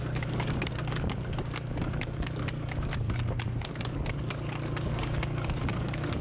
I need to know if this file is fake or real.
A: fake